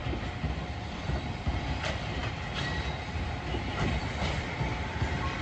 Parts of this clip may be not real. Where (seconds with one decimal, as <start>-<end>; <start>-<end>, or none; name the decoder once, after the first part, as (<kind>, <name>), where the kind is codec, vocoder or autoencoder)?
0.5-2.2 (vocoder, BigVGAN v2); 3.9-5.4